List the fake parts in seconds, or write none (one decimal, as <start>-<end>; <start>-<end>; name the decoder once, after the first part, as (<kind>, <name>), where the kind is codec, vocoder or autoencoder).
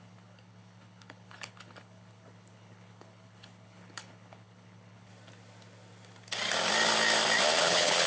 0.0-5.1 (codec, HILCodec); 7.6-8.1